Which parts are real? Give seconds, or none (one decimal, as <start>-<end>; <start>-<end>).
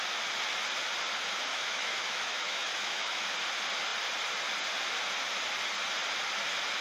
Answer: 0.0-1.5; 3.3-6.8